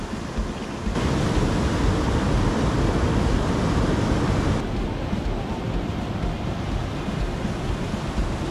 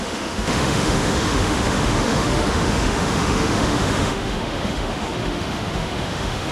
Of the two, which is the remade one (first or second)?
second